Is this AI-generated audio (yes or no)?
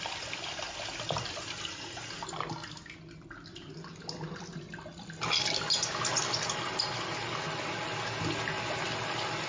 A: no